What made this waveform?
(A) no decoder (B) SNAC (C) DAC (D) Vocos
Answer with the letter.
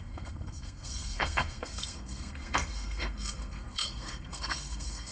B